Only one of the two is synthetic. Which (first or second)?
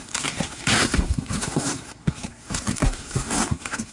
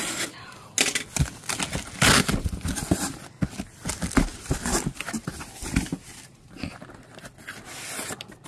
first